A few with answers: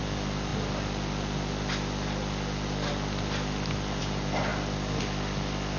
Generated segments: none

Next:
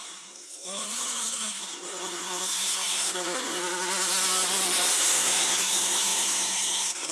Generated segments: 0.0-3.6 (codec, SNAC); 4.9-7.1